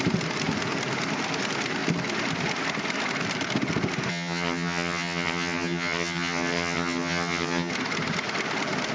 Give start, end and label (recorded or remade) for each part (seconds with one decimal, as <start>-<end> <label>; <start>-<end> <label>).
0.0-4.1 recorded; 4.1-7.7 remade; 7.7-8.9 recorded